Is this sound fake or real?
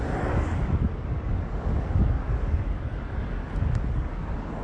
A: fake